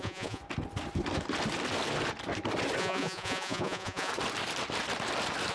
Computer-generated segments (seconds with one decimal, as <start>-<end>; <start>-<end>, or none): 0.0-0.4; 2.8-4.1